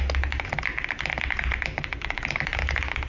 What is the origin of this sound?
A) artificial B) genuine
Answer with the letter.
B